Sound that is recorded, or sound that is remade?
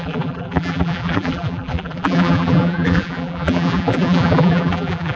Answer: remade